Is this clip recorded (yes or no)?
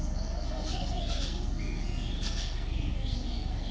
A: no